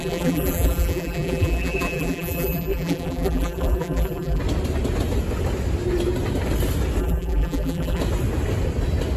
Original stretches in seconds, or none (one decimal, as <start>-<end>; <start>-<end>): 4.4-7.0; 8.0-9.2